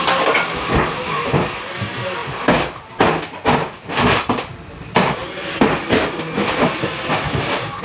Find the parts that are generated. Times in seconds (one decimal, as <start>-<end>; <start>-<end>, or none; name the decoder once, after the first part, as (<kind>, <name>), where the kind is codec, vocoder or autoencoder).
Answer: none